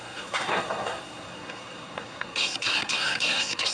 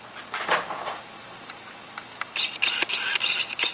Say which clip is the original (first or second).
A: second